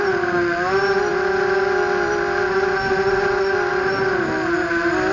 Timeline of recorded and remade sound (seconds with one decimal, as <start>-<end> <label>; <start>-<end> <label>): 0.0-5.1 recorded